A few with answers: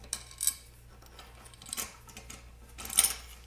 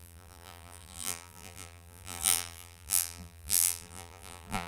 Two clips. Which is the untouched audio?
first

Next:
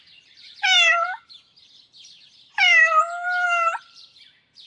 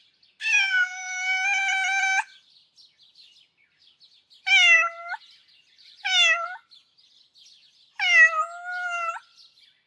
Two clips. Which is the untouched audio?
second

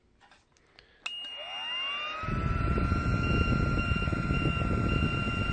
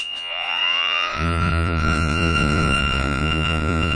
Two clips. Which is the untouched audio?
first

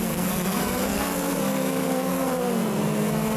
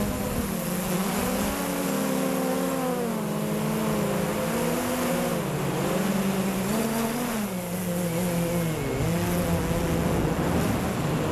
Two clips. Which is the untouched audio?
second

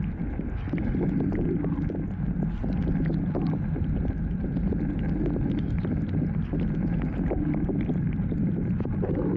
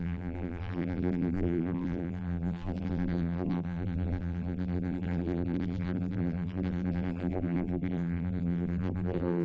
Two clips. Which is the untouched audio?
first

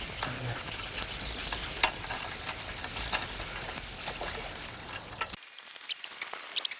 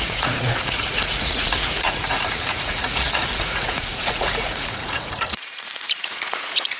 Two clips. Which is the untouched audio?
first